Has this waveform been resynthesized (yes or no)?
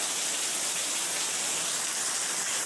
no